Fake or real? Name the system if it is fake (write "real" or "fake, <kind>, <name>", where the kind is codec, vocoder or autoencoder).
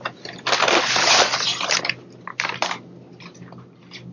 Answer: real